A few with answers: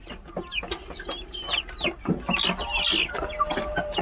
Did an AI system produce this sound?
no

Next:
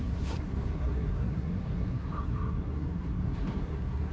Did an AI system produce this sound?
yes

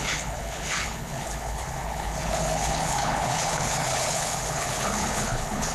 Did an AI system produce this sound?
yes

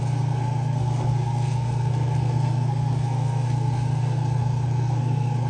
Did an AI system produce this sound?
yes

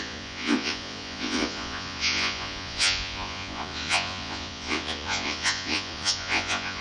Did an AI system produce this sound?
yes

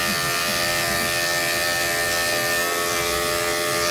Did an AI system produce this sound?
no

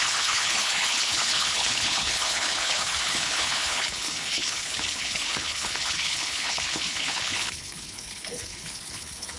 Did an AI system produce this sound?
yes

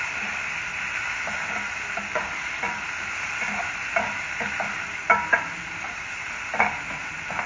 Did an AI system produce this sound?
no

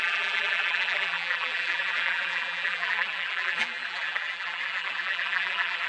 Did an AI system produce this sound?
yes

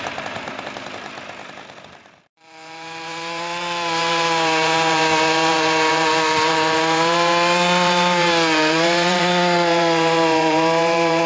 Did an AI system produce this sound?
yes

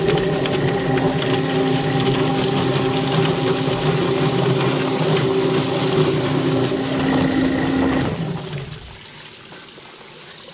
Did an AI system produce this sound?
no